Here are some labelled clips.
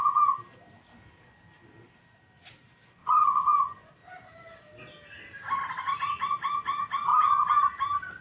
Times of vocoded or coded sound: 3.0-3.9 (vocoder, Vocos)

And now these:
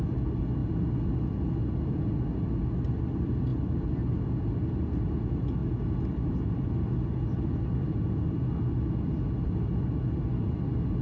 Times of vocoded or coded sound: none

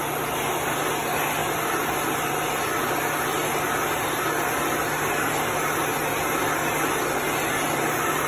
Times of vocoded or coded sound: 1.4-2.6 (vocoder, BigVGAN v2)

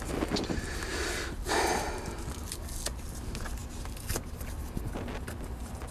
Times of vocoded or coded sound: none

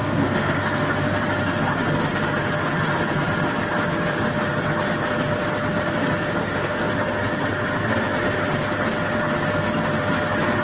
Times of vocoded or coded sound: 0.0-1.0 (codec, SNAC); 6.4-6.9